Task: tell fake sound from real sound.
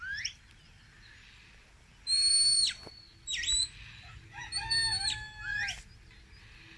real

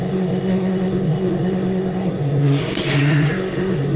fake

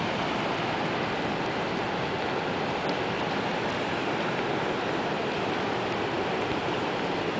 real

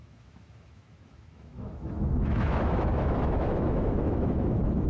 fake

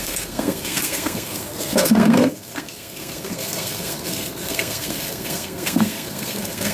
fake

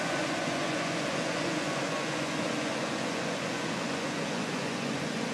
fake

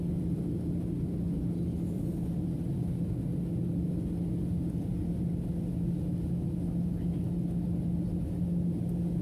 real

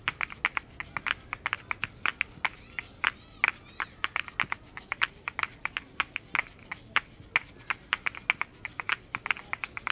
real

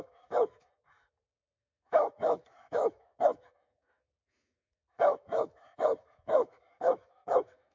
fake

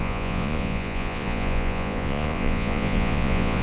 fake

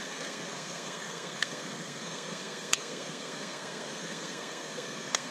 fake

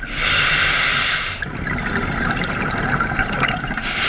real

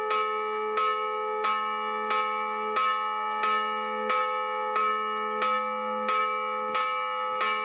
real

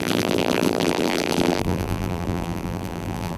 fake